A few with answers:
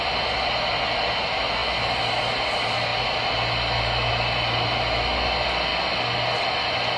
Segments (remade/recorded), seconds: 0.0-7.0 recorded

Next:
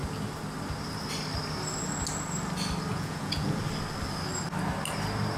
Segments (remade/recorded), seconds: 0.0-2.9 recorded; 2.9-3.6 remade; 3.6-5.4 recorded

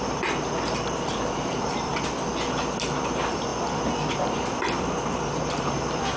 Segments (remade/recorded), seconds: 0.0-1.9 remade; 1.9-2.7 recorded; 2.7-3.5 remade; 3.5-4.1 recorded; 4.1-6.2 remade

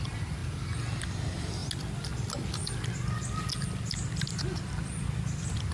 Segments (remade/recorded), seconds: 0.0-5.7 recorded

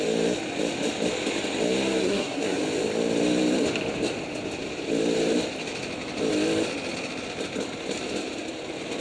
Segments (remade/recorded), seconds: 0.0-2.0 recorded; 2.0-2.6 remade; 2.6-9.0 recorded

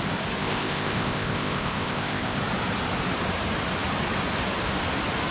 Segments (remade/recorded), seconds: 0.0-0.4 recorded; 0.4-2.4 remade; 2.4-5.3 recorded

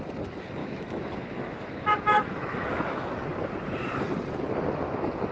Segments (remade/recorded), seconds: 0.0-0.6 recorded; 0.6-3.1 remade; 3.1-5.3 recorded

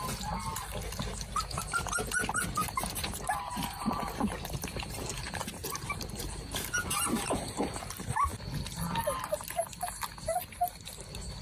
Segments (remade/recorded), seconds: 0.0-2.6 recorded; 2.6-7.4 remade; 7.4-11.4 recorded